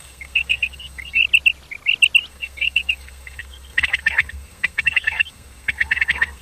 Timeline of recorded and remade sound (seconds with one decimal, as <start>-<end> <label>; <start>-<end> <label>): 0.0-1.2 remade; 1.2-2.3 recorded; 2.3-6.4 remade